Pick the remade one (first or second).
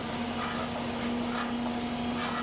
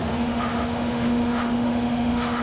second